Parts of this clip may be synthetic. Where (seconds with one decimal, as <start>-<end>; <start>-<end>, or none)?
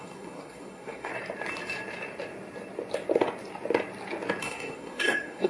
0.0-1.1; 4.4-5.5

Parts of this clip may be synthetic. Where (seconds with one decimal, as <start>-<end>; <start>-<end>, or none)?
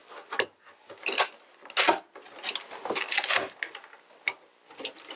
none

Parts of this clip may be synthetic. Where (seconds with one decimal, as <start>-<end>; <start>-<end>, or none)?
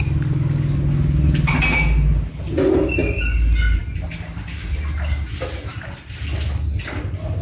none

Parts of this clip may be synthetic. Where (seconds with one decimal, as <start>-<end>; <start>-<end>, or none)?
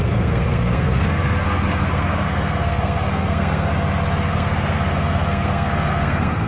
0.0-3.7; 4.3-6.5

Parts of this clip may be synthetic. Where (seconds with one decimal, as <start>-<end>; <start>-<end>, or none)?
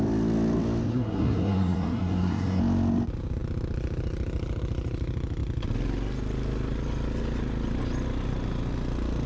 0.9-2.6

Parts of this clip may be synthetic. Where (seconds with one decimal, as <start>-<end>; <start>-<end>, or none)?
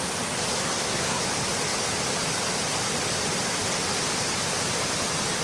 0.6-1.2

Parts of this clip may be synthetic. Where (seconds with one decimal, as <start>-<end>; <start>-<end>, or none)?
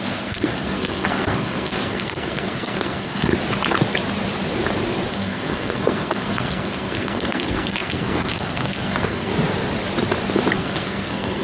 0.0-3.3; 5.1-9.3; 10.5-11.4